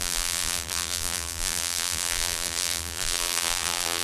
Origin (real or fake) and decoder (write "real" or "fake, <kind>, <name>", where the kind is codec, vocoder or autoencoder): fake, vocoder, BigVGAN v2